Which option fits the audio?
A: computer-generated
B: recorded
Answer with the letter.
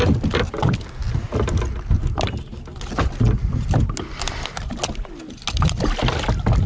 B